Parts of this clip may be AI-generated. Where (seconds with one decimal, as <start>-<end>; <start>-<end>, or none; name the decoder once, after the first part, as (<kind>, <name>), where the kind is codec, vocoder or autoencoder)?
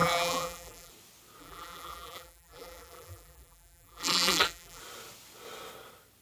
0.0-0.9 (vocoder, BigVGAN v2); 1.4-4.8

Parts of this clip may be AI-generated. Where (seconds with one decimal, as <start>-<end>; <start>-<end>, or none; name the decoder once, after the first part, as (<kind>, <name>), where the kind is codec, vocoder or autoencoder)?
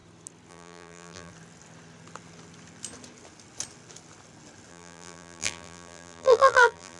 0.5-1.3 (vocoder, BigVGAN v2); 4.7-7.0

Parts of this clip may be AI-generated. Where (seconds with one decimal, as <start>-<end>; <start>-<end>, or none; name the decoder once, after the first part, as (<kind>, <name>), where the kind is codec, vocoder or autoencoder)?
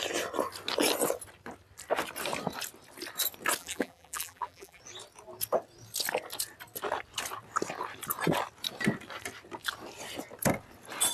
3.6-4.8 (vocoder, BigVGAN v2)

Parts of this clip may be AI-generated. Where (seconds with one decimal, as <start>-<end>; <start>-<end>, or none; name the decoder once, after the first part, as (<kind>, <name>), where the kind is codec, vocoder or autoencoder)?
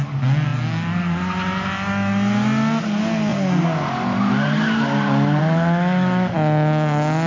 none